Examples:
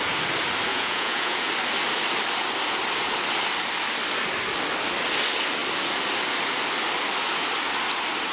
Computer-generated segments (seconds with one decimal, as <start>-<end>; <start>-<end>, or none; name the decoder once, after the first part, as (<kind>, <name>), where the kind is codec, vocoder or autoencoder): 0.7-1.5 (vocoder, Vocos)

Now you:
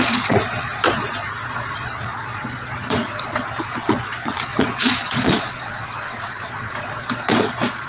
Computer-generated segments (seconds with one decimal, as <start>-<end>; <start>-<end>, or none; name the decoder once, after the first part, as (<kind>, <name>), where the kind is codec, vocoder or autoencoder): 0.0-7.9 (vocoder, Vocos)

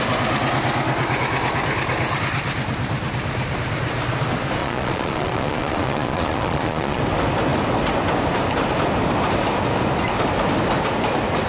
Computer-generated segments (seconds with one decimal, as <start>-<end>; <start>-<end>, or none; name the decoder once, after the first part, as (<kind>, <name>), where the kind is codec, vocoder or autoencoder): 4.6-7.0 (vocoder, Vocos)